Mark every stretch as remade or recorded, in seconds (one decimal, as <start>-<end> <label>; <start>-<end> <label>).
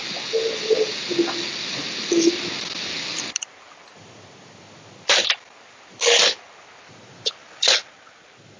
0.0-8.6 recorded